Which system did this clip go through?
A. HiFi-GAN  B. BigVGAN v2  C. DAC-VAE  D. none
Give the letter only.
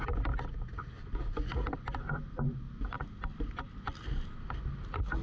D